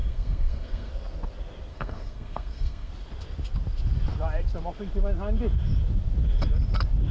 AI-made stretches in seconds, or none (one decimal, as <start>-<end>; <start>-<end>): 0.0-0.9; 1.7-2.9